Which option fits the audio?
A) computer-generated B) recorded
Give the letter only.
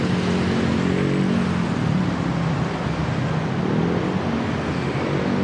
B